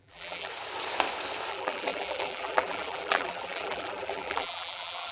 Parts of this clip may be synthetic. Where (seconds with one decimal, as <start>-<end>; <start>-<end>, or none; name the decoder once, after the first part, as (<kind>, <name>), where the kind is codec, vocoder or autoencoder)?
0.0-0.5 (vocoder, BigVGAN v2); 1.5-5.1